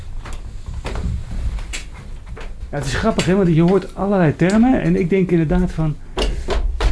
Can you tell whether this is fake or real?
real